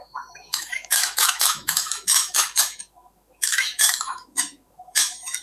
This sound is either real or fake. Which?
fake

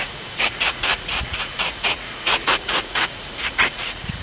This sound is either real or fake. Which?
fake